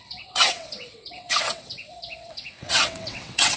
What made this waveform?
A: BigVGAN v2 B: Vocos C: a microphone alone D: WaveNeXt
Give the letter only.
D